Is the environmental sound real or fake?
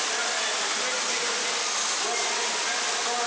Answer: real